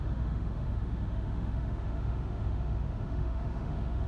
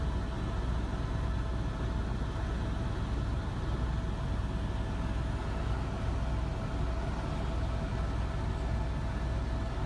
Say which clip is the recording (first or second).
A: second